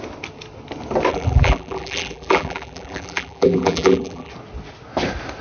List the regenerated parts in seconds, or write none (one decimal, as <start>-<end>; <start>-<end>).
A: 1.1-4.3